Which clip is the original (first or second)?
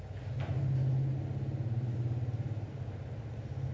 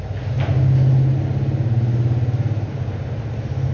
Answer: second